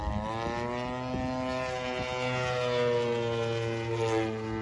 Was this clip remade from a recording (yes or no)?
no